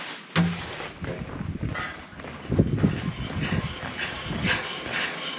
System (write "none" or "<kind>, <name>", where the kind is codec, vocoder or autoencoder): none